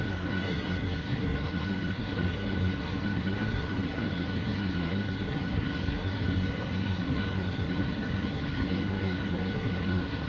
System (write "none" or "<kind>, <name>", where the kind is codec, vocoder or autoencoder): codec, SNAC